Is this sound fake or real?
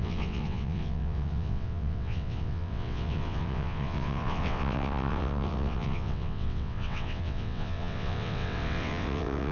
fake